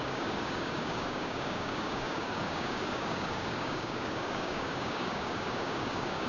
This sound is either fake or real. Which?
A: fake